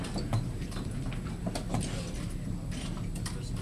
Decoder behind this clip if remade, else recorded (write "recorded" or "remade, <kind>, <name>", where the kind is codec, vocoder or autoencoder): recorded